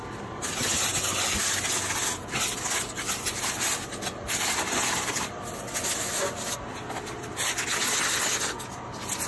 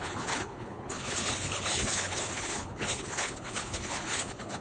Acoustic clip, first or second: first